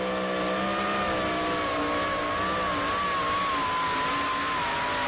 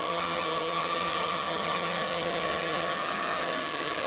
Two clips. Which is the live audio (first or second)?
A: first